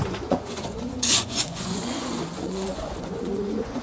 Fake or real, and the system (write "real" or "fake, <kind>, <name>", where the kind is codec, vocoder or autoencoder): fake, vocoder, Vocos